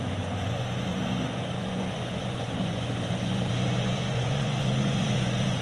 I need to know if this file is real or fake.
fake